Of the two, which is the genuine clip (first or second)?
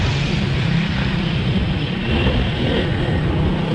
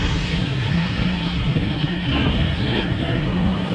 first